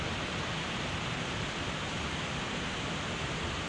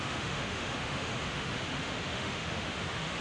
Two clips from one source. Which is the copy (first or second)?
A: second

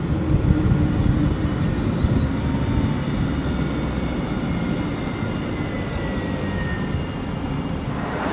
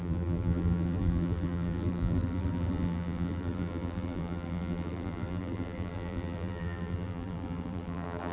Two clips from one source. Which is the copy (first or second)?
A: second